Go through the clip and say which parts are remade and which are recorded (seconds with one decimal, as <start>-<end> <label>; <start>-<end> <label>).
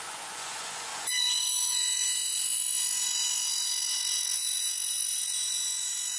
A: 0.0-6.2 remade